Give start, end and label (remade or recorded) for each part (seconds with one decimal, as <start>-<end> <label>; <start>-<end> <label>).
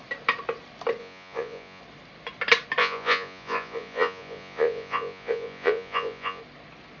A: 0.0-1.0 recorded; 1.0-1.8 remade; 1.8-2.8 recorded; 2.8-6.4 remade; 6.4-7.0 recorded